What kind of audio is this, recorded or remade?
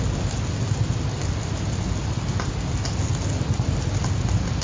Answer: recorded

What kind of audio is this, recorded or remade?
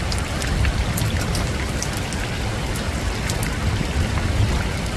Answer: recorded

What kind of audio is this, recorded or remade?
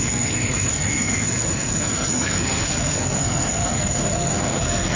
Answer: remade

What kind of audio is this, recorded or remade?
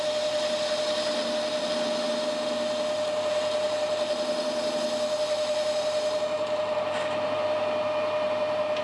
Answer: recorded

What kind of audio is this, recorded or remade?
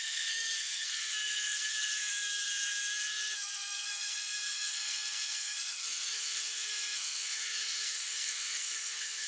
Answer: remade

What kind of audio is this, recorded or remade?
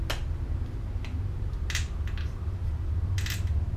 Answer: recorded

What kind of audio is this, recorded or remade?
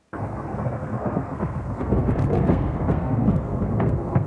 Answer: remade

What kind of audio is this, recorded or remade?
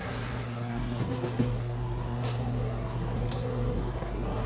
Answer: remade